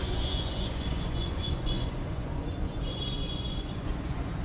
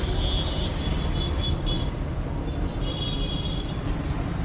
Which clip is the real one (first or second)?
second